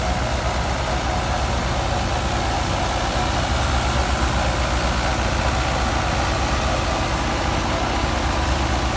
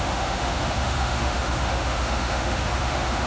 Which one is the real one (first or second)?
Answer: first